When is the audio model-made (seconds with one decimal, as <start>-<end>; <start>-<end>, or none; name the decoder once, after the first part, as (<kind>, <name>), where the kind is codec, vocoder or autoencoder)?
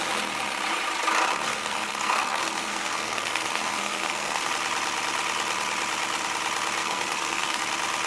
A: 1.5-4.5 (codec, SNAC); 6.8-7.6